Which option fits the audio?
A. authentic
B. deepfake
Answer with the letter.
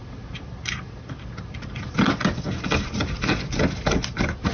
A